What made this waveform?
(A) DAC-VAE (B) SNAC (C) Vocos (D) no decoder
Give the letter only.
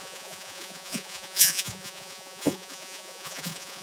C